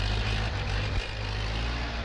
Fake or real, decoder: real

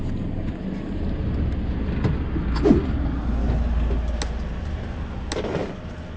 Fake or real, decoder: real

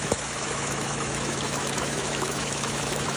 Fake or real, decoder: fake, autoencoder, DAC-VAE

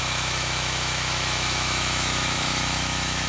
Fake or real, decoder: fake, autoencoder, DAC-VAE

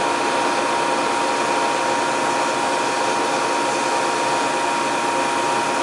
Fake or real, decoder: real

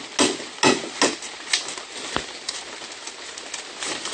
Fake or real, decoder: real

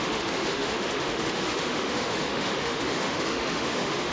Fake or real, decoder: fake, autoencoder, DAC-VAE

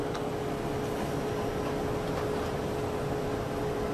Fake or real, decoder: real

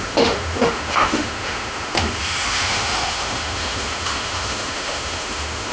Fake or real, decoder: fake, autoencoder, DAC-VAE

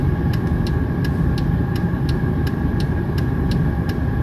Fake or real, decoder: real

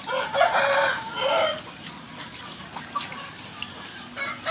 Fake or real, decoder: real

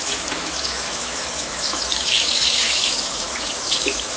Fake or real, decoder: fake, autoencoder, DAC-VAE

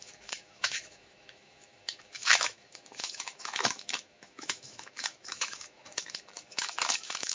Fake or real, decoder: fake, autoencoder, DAC-VAE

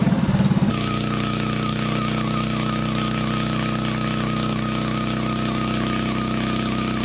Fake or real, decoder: real